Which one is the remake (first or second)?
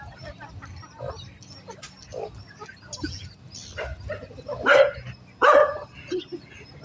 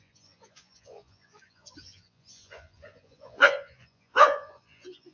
second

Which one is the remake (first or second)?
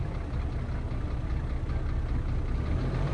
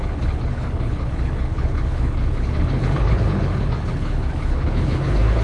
second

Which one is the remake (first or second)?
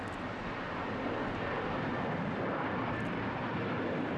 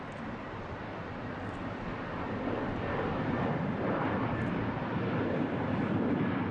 second